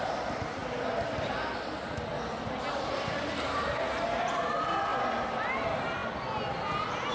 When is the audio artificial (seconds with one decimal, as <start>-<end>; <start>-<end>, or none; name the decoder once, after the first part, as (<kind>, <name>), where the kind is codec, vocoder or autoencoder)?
none

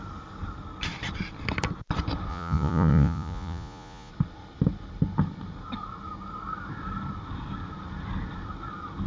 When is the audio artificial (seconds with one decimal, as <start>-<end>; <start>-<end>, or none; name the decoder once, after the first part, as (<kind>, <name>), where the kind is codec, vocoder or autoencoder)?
2.3-4.1 (vocoder, Vocos)

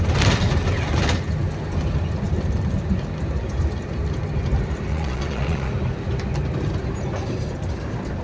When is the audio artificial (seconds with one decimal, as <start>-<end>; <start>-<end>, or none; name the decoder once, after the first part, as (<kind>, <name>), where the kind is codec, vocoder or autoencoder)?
4.9-5.7 (vocoder, Vocos)

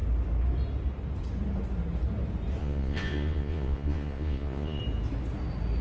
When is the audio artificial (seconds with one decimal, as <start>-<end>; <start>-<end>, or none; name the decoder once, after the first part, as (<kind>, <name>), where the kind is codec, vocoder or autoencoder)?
2.6-4.8 (vocoder, Vocos)

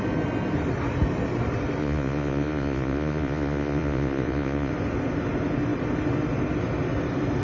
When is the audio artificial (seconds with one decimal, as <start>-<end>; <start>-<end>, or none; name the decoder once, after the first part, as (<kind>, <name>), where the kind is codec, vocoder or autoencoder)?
1.8-4.7 (vocoder, Vocos)

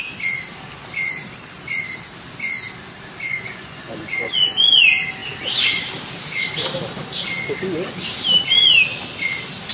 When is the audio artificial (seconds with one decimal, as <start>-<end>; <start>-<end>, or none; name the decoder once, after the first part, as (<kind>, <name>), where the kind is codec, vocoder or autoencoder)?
3.3-4.8 (vocoder, Vocos)

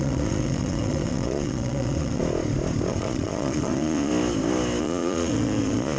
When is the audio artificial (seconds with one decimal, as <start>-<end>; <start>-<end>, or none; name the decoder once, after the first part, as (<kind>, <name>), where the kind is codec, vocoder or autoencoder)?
0.0-2.2 (vocoder, Vocos); 2.9-4.1; 4.8-6.0

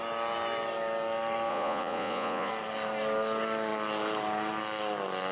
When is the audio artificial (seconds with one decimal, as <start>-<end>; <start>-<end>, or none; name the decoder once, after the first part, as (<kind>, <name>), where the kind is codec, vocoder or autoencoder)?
1.5-2.5 (vocoder, Vocos)